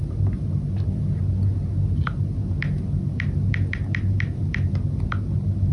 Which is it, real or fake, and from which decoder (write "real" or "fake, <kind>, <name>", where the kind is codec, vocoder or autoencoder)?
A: real